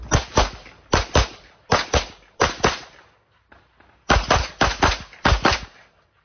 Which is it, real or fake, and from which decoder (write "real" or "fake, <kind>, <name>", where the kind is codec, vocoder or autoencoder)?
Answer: real